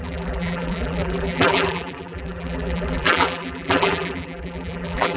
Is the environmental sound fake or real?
fake